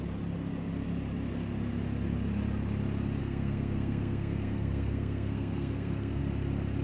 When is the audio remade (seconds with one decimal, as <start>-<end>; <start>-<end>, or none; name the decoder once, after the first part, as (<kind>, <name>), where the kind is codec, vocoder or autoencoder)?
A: 3.2-6.2 (codec, SNAC)